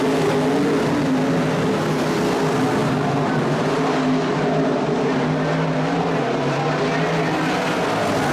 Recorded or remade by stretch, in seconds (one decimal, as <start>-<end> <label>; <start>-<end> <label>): 0.0-2.8 recorded; 2.8-6.8 remade; 6.8-8.3 recorded